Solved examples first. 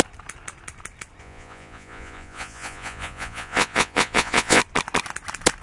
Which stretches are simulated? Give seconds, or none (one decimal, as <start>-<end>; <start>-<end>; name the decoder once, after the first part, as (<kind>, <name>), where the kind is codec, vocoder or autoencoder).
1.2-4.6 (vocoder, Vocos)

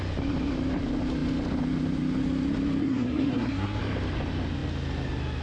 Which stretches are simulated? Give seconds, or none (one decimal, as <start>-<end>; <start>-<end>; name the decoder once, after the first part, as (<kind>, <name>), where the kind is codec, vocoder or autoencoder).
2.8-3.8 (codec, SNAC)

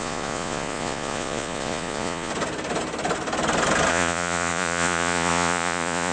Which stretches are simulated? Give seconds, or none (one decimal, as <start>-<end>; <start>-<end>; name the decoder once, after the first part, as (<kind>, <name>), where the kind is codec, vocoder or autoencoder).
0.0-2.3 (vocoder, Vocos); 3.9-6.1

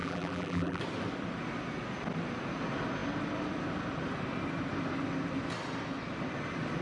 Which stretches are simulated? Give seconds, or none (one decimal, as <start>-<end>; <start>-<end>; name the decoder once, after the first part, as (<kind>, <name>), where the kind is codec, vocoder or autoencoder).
0.0-0.8 (vocoder, BigVGAN v2)